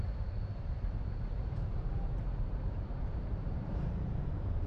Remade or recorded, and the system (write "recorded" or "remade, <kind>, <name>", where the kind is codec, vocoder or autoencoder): remade, vocoder, BigVGAN v2